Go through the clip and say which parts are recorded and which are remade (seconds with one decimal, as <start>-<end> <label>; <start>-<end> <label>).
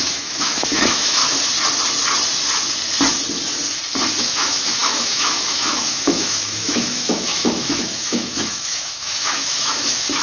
0.0-1.2 remade; 1.2-4.2 recorded; 4.2-10.2 remade